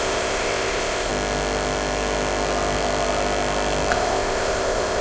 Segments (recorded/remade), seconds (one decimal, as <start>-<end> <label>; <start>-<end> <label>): 0.0-1.1 remade; 1.1-3.9 recorded; 3.9-5.0 remade